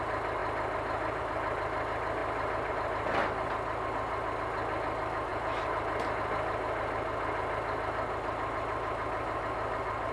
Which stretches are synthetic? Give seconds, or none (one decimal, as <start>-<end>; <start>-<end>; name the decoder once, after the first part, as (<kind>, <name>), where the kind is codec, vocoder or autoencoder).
none